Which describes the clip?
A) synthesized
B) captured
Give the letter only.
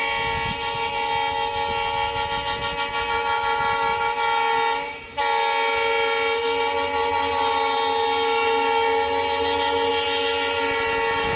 B